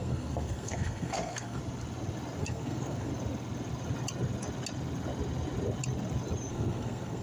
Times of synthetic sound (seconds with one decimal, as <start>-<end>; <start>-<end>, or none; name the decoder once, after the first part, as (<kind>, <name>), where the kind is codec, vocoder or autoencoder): 0.0-1.6 (codec, SNAC); 2.4-3.1; 6.5-7.2